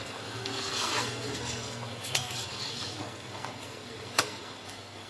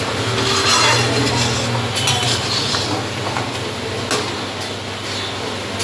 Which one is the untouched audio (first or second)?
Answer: second